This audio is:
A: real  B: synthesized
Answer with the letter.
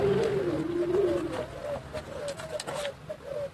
A